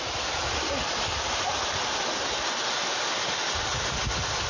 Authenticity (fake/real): real